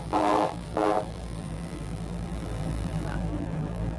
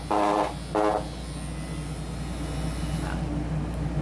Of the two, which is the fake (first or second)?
first